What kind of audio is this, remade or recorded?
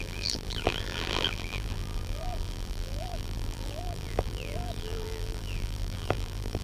remade